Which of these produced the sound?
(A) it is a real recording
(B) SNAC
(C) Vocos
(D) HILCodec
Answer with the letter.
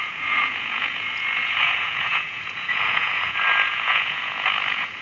C